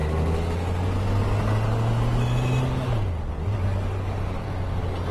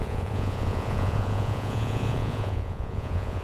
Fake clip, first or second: second